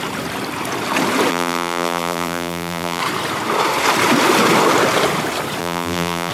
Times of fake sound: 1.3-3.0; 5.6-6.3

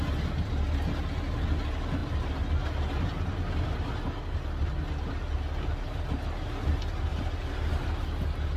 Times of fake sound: none

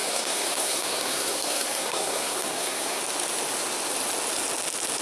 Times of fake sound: 0.0-3.0